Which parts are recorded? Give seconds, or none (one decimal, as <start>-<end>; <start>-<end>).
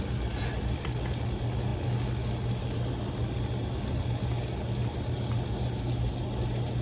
0.0-6.8